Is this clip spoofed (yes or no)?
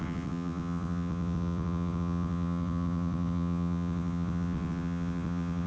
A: yes